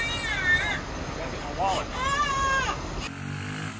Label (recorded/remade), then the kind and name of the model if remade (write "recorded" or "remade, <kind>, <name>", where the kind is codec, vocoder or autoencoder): recorded